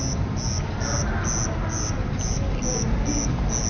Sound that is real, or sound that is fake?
real